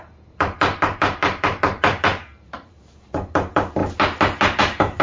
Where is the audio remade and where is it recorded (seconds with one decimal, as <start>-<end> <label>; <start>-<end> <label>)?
0.0-3.8 remade; 3.8-4.6 recorded; 4.6-5.0 remade